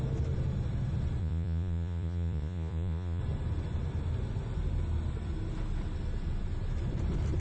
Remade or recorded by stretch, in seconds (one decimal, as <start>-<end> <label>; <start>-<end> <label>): 0.0-1.2 recorded; 1.2-3.2 remade; 3.2-7.4 recorded